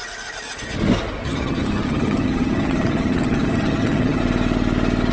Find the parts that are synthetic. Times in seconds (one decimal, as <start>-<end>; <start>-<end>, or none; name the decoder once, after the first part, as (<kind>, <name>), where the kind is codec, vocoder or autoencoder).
1.2-4.2 (vocoder, HiFi-GAN)